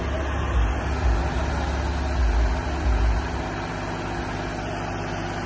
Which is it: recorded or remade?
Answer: recorded